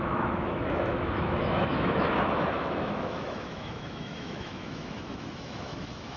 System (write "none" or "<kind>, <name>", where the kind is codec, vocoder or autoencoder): autoencoder, DAC-VAE